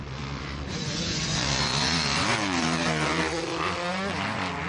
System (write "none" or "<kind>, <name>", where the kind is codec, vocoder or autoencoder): vocoder, Vocos